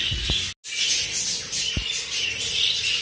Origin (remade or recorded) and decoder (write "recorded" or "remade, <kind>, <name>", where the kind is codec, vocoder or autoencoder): recorded